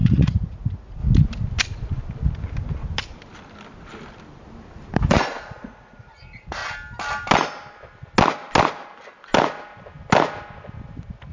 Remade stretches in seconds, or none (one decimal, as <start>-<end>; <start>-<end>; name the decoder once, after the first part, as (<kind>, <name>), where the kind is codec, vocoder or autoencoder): 0.0-1.0 (vocoder, Vocos); 5.1-6.6